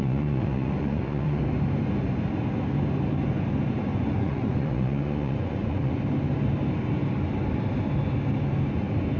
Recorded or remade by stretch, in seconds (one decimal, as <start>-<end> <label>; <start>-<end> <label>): 0.0-1.4 remade; 1.4-3.9 recorded; 3.9-6.0 remade; 6.0-9.2 recorded